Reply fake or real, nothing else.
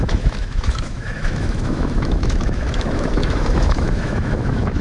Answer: fake